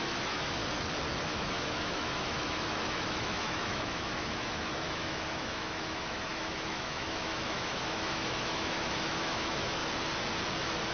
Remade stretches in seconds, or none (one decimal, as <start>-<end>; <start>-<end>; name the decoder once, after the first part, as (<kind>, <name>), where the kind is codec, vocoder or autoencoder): 0.0-0.6 (autoencoder, DAC-VAE); 1.2-9.8